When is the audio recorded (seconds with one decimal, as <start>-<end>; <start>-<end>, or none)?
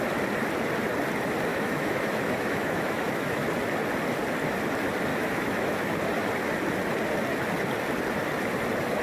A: 0.0-1.5; 3.5-5.1; 6.0-9.0